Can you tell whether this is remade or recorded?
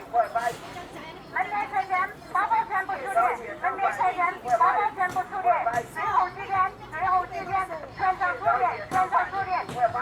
recorded